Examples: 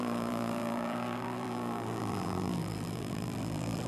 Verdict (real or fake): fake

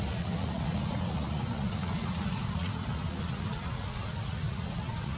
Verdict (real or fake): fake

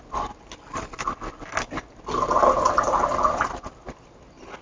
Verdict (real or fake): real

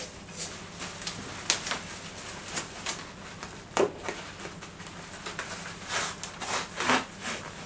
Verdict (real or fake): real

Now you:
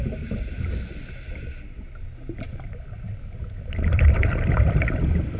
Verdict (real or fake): real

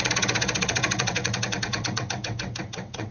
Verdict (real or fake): fake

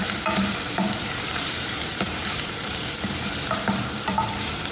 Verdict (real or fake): fake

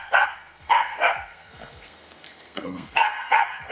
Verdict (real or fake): fake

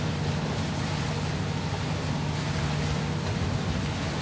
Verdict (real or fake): real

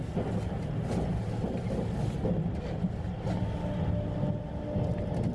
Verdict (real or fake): real